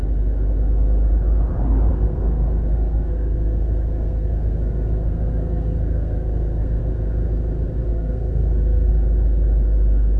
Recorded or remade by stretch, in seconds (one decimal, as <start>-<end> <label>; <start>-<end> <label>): 0.0-1.9 recorded; 1.9-6.8 remade; 6.8-7.9 recorded; 7.9-8.9 remade; 8.9-10.2 recorded